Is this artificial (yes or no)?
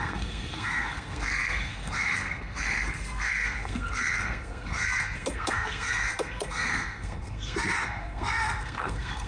yes